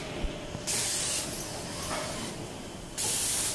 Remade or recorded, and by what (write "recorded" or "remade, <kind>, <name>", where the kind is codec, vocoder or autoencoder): remade, vocoder, BigVGAN v2